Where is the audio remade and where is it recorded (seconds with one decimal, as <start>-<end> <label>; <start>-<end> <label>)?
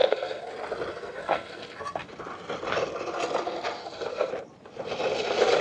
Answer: 0.0-0.5 remade; 0.5-0.9 recorded; 0.9-2.1 remade; 2.1-3.8 recorded; 3.8-4.3 remade; 4.3-5.6 recorded